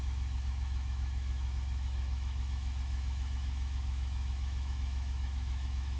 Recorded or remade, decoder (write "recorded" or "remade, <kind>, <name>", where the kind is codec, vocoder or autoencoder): remade, autoencoder, DAC-VAE